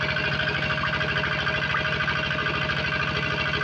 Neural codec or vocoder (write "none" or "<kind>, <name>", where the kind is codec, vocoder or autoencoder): none